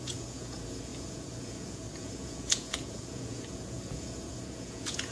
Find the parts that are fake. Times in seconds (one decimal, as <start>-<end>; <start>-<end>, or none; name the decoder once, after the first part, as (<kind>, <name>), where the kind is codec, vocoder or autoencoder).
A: 0.0-5.1 (vocoder, Vocos)